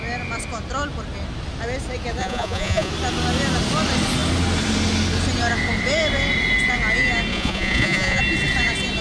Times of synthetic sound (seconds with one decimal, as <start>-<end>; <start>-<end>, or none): 2.2-2.9; 7.3-8.2